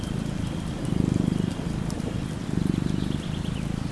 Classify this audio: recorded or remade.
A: recorded